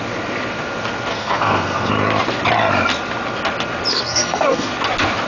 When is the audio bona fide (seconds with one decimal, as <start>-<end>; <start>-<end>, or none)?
0.0-1.1; 1.9-3.9; 4.7-5.3